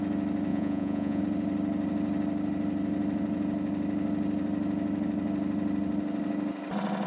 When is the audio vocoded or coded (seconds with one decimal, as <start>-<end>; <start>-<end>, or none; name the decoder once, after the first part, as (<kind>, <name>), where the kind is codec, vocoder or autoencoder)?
0.5-1.2 (vocoder, Vocos)

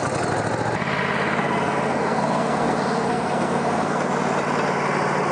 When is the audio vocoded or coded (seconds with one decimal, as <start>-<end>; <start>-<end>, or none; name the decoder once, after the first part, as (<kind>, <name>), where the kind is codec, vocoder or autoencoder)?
1.4-4.1 (codec, SNAC)

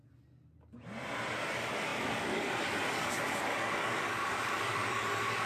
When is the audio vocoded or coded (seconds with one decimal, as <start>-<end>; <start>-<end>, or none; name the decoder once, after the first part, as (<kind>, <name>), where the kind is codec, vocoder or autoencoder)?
1.5-5.5 (codec, DAC)

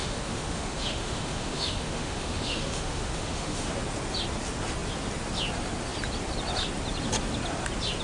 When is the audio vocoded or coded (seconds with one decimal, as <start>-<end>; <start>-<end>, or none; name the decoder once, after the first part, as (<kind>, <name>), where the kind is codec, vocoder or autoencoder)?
0.0-3.7 (autoencoder, DAC-VAE)

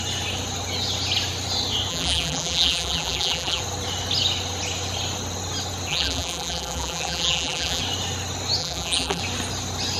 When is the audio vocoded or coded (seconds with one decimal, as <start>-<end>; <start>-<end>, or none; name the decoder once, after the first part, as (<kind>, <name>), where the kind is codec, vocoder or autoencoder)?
1.9-3.6 (vocoder, BigVGAN v2); 5.9-7.8; 8.6-9.2

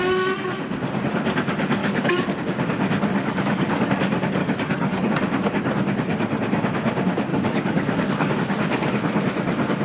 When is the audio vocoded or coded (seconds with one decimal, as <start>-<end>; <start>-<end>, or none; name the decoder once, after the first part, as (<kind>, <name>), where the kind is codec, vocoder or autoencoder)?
1.8-2.4 (codec, DAC); 3.1-3.9; 4.4-5.1; 7.3-8.3

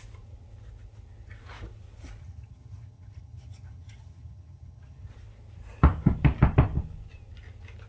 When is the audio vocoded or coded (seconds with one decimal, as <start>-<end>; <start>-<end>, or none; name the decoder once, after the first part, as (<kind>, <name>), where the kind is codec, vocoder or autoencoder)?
2.2-5.1 (vocoder, HiFi-GAN)